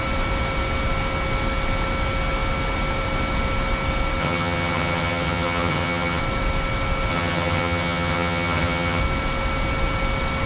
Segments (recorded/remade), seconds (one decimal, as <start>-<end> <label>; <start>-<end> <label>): 0.0-4.2 recorded; 4.2-6.2 remade; 6.2-7.1 recorded; 7.1-9.0 remade; 9.0-10.5 recorded